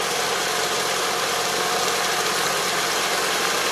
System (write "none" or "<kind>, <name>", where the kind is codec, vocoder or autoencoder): none